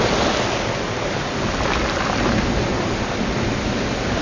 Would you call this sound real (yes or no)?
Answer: yes